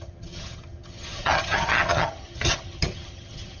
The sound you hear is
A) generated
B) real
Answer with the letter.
A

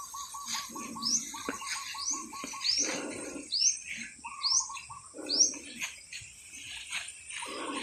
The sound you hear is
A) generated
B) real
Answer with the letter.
B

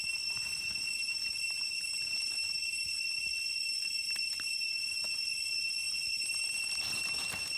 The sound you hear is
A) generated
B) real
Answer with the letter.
B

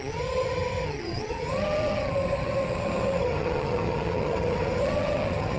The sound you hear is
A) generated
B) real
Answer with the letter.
A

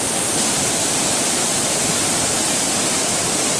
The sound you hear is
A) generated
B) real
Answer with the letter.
A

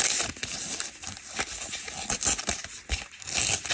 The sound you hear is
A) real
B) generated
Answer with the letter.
A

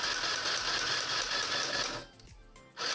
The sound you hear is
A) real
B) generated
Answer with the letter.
A